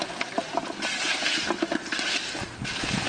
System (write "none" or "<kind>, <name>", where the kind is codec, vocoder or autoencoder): none